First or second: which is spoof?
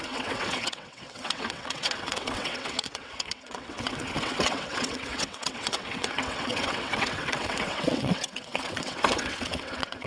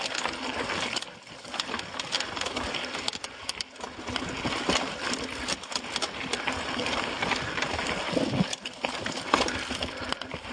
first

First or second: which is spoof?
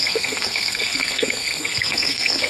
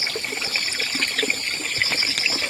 first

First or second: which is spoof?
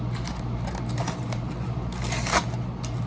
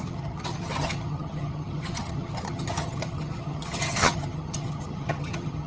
second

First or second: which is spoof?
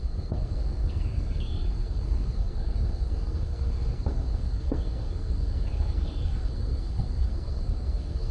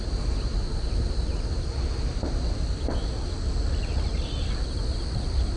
first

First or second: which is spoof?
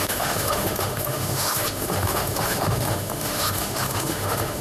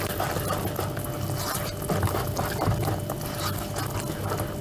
first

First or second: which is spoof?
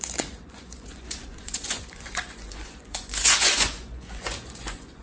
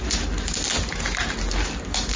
first